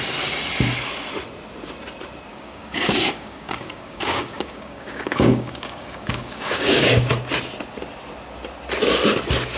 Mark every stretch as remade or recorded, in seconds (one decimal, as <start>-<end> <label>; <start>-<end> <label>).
0.0-2.3 recorded; 2.3-7.1 remade; 7.1-9.6 recorded